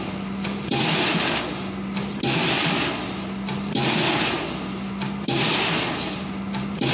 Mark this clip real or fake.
real